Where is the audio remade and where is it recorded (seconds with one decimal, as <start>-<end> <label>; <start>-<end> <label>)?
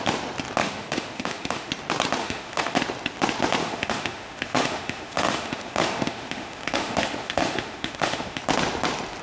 0.0-0.6 recorded; 0.6-1.7 remade; 1.7-2.2 recorded; 2.2-2.8 remade; 2.8-3.6 recorded; 3.6-8.4 remade; 8.4-9.2 recorded